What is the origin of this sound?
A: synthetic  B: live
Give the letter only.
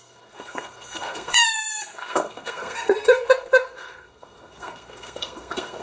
A